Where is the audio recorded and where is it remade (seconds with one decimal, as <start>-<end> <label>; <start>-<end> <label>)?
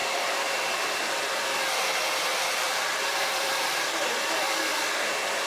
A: 0.0-1.0 remade; 1.0-2.3 recorded; 2.3-3.8 remade; 3.8-5.5 recorded